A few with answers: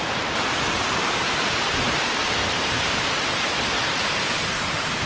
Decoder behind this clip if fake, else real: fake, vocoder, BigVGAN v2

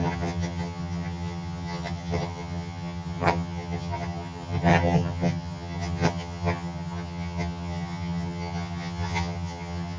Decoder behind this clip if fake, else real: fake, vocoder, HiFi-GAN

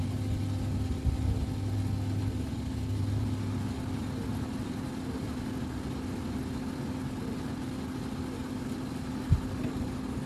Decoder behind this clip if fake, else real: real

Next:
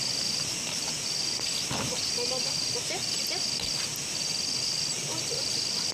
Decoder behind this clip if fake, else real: real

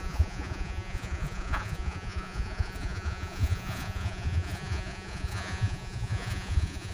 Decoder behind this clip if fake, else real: fake, vocoder, Vocos